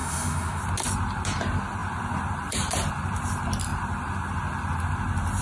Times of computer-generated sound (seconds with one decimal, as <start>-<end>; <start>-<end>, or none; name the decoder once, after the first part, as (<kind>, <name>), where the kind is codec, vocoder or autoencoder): 0.0-0.6 (autoencoder, DAC-VAE)